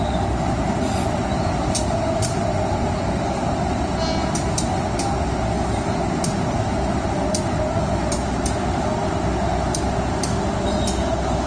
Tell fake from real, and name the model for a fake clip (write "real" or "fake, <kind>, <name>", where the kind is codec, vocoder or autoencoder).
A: real